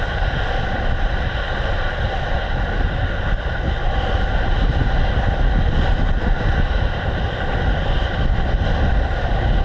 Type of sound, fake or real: real